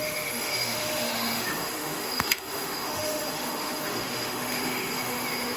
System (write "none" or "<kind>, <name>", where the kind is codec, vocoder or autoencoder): autoencoder, DAC-VAE